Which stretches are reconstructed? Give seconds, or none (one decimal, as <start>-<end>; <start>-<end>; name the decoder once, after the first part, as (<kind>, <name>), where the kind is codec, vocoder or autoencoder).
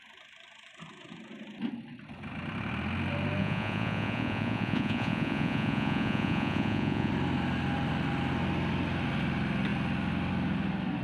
3.4-7.1 (vocoder, Vocos)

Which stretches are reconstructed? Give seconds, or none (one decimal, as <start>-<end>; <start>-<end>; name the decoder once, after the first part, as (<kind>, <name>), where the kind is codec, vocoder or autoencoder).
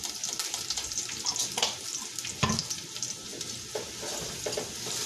none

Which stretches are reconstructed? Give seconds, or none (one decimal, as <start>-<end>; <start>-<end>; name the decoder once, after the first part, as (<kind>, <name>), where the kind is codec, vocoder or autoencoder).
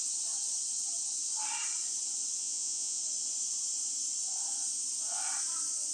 2.4-3.0 (vocoder, Vocos)